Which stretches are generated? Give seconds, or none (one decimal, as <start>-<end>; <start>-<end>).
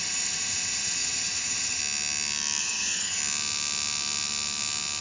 0.0-1.8; 2.6-3.2